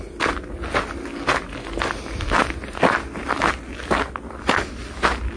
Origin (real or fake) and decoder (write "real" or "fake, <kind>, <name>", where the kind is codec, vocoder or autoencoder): real